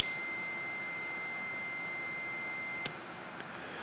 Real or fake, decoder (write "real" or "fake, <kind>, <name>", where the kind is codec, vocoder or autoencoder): real